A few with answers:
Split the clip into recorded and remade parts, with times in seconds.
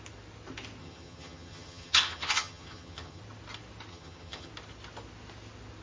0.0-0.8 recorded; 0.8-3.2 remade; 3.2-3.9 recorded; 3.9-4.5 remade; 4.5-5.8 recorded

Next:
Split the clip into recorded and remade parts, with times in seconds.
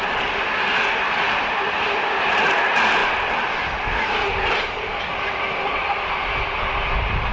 0.0-7.3 recorded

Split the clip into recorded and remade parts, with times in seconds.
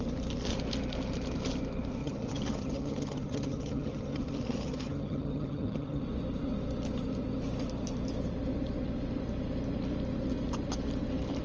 0.0-2.0 recorded; 2.0-6.0 remade; 6.0-11.4 recorded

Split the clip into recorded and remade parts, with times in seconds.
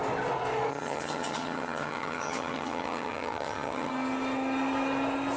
0.0-0.7 recorded; 0.7-3.9 remade; 3.9-5.4 recorded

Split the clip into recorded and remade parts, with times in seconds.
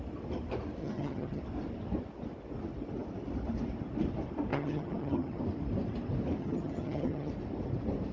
0.0-0.8 recorded; 0.8-1.4 remade; 1.4-4.5 recorded; 4.5-5.4 remade; 5.4-6.4 recorded; 6.4-7.3 remade; 7.3-8.1 recorded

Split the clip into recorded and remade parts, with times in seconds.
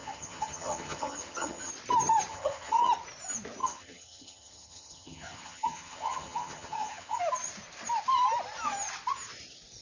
0.0-1.7 remade; 1.7-2.3 recorded; 2.3-2.9 remade; 2.9-3.6 recorded; 3.6-7.2 remade; 7.2-9.8 recorded